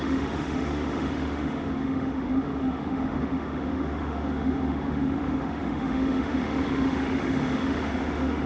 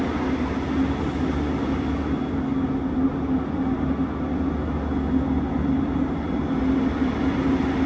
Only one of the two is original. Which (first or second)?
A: second